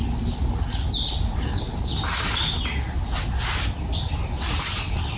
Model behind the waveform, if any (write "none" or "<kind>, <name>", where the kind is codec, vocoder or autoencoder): none